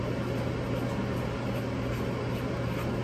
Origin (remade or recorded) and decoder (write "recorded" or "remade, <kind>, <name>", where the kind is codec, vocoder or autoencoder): recorded